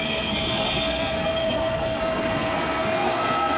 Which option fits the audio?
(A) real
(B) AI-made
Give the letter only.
B